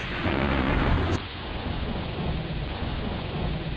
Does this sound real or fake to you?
fake